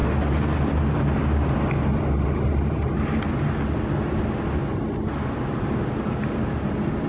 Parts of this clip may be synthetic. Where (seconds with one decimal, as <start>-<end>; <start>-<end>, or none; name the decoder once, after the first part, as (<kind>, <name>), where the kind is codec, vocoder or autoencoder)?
none